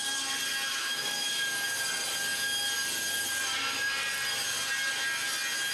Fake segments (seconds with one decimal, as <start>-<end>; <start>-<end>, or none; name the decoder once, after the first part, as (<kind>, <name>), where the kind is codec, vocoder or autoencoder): 0.7-1.3 (autoencoder, DAC-VAE)

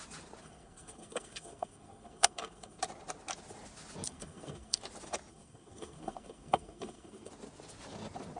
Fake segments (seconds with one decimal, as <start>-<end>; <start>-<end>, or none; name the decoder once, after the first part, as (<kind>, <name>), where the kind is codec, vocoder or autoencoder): 0.4-2.8 (codec, SNAC); 4.1-4.8; 5.3-7.3

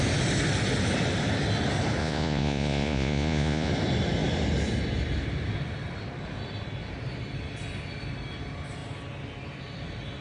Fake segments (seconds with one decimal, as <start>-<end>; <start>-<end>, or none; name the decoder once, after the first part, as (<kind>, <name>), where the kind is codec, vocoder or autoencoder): 2.0-3.7 (vocoder, Vocos)